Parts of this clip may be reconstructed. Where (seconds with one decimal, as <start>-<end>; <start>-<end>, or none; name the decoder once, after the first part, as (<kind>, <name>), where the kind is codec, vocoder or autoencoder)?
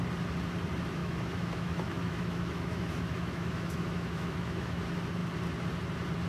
1.0-4.8 (autoencoder, DAC-VAE)